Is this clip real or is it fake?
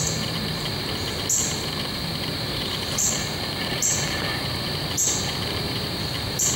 fake